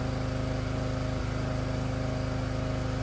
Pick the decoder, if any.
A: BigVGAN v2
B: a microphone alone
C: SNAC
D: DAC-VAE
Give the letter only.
B